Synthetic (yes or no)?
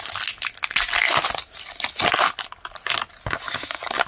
no